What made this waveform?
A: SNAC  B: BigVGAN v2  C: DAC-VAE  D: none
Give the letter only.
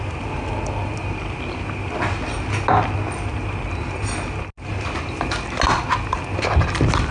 D